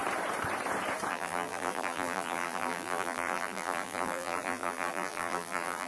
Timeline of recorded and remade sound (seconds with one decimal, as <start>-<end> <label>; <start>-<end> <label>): 0.0-1.1 recorded; 1.1-5.9 remade